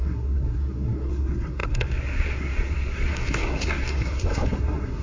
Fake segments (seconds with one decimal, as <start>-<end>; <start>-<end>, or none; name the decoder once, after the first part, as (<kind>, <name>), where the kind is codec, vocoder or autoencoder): 0.0-5.0 (codec, SNAC)

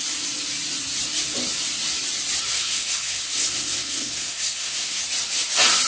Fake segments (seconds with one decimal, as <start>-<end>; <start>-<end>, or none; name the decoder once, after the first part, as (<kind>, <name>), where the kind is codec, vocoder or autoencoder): 2.5-5.0 (codec, SNAC)

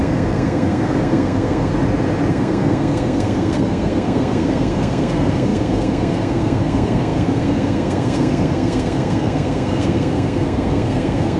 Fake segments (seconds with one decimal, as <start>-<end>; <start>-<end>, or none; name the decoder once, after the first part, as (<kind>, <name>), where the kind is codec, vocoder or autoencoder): 0.0-1.7 (codec, SNAC); 2.3-11.4

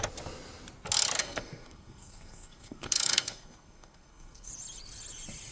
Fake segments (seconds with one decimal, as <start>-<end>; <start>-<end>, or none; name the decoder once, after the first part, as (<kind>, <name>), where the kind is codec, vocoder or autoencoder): 1.2-4.5 (codec, SNAC)